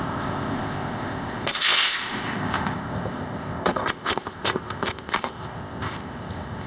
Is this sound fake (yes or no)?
yes